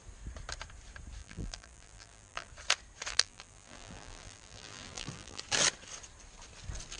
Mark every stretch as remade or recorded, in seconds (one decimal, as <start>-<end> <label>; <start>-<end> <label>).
0.0-1.2 recorded; 1.2-2.5 remade; 2.5-3.1 recorded; 3.1-5.4 remade; 5.4-7.0 recorded

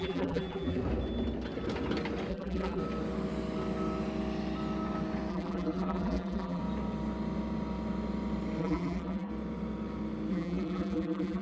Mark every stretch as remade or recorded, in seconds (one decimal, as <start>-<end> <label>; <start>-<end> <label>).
0.0-0.8 remade; 0.8-2.3 recorded; 2.3-2.8 remade; 2.8-5.3 recorded; 5.3-6.6 remade; 6.6-8.6 recorded; 8.6-9.3 remade; 9.3-10.3 recorded; 10.3-11.4 remade

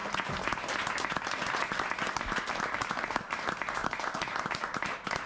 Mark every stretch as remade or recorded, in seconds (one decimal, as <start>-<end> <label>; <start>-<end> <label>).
0.0-3.8 recorded; 3.8-5.3 remade

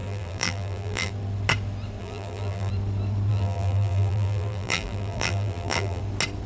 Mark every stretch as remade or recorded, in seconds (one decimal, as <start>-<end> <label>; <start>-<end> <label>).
0.0-1.1 remade; 1.1-2.0 recorded; 2.0-2.7 remade; 2.7-3.3 recorded; 3.3-6.0 remade; 6.0-6.5 recorded

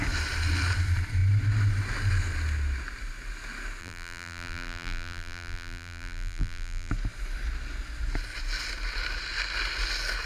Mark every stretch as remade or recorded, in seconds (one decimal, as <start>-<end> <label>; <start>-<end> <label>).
0.0-3.8 recorded; 3.8-6.9 remade; 6.9-10.3 recorded

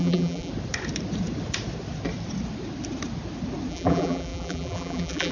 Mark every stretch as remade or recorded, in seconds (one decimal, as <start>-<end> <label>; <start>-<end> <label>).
0.0-0.5 remade; 0.5-3.7 recorded; 3.7-5.3 remade